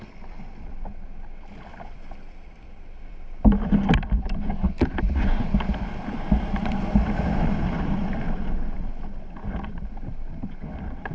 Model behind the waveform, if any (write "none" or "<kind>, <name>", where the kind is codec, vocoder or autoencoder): none